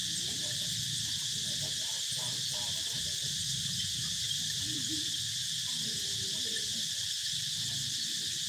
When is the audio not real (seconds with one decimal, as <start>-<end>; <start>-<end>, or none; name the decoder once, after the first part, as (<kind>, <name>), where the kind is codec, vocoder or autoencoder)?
3.2-5.2 (vocoder, BigVGAN v2)